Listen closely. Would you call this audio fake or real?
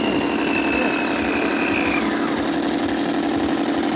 real